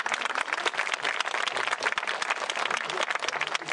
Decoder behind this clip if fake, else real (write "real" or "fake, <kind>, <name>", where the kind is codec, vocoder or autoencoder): real